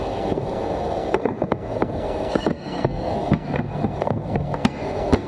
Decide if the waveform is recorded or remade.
remade